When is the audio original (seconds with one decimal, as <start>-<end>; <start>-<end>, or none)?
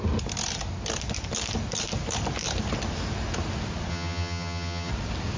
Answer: 0.0-3.9; 4.9-5.4